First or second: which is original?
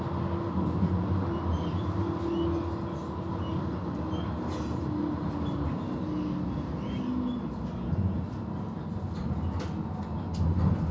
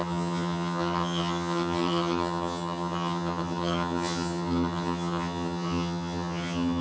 first